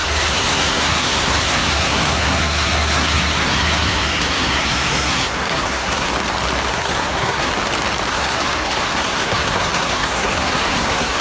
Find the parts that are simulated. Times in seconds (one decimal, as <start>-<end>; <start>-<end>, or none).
0.0-6.1; 6.7-7.5; 8.1-11.2